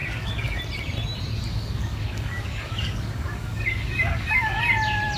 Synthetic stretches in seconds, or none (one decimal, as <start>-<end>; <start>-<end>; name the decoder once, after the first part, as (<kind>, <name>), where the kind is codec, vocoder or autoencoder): 0.0-0.6 (codec, DAC); 1.5-4.6